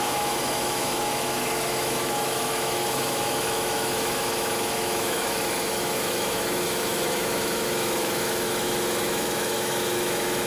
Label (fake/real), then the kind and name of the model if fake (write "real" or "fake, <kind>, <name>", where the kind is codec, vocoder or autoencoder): fake, autoencoder, DAC-VAE